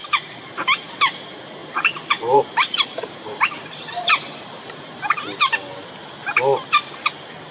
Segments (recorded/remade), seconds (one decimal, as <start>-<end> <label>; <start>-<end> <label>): 0.0-1.2 remade; 1.2-1.6 recorded; 1.6-5.2 remade; 5.2-7.5 recorded